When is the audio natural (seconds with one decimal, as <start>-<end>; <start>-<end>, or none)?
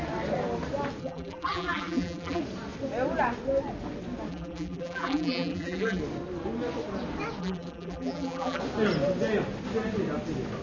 0.0-1.0; 2.4-4.3; 6.0-7.4; 8.6-10.6